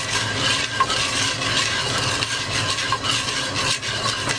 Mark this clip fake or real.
real